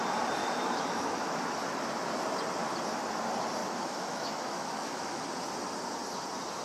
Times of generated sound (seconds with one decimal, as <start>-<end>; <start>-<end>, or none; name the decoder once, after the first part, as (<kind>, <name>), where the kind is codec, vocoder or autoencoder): 0.4-1.4 (autoencoder, DAC-VAE); 3.6-5.2